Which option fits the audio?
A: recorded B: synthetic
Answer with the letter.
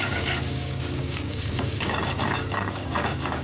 B